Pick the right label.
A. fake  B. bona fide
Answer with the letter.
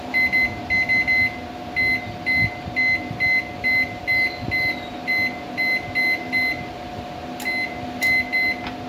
B